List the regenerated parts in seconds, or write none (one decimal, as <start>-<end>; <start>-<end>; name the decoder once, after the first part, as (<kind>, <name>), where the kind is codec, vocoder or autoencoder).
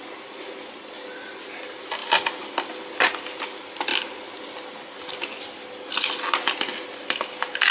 none